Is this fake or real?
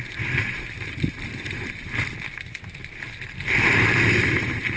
real